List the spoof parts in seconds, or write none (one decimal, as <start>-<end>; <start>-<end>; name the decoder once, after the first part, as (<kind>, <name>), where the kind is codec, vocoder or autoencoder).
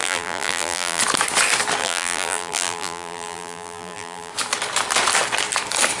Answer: 0.0-1.0 (vocoder, BigVGAN v2); 1.8-4.3